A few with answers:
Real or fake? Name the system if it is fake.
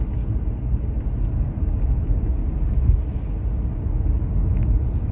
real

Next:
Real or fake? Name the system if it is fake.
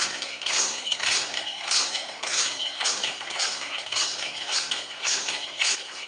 fake, codec, SNAC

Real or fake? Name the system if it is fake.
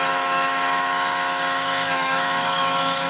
fake, autoencoder, DAC-VAE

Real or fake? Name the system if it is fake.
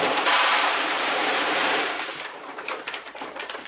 fake, vocoder, BigVGAN v2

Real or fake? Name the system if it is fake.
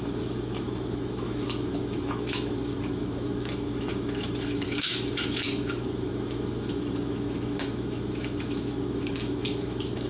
fake, autoencoder, DAC-VAE